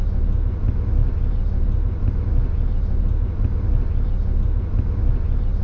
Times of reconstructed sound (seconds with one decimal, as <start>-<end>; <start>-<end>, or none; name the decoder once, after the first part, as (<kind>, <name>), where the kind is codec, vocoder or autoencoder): none